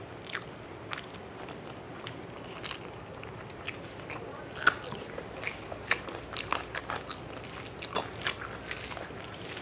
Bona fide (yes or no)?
yes